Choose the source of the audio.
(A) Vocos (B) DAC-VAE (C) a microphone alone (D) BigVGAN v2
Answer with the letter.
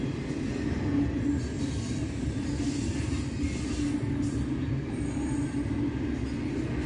C